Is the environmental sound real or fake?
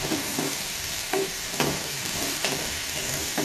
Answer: fake